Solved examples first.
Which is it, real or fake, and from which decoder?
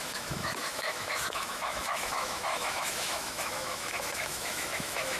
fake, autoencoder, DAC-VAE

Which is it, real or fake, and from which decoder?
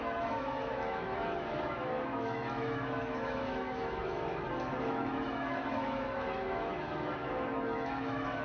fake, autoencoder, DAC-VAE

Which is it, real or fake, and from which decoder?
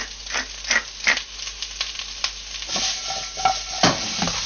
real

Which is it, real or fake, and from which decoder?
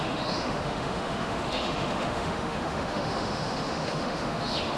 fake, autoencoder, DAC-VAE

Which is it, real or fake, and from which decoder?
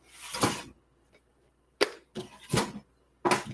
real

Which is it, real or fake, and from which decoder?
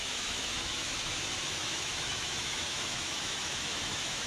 fake, autoencoder, DAC-VAE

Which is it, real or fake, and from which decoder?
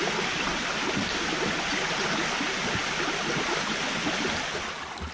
real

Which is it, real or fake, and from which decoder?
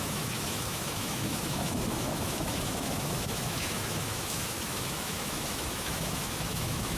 fake, autoencoder, DAC-VAE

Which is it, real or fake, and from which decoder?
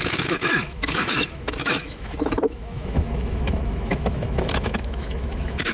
fake, autoencoder, DAC-VAE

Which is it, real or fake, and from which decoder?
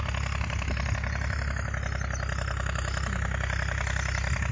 real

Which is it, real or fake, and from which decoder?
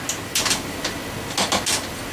real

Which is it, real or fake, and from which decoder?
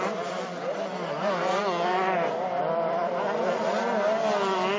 real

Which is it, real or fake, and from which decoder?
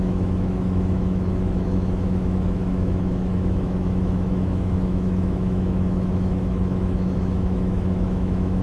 fake, autoencoder, DAC-VAE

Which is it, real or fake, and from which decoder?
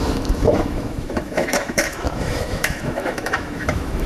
fake, autoencoder, DAC-VAE